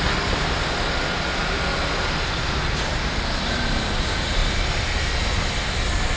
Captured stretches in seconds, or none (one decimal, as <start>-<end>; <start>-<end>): 0.0-1.7; 2.6-6.2